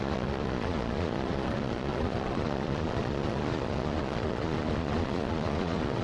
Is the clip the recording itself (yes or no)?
no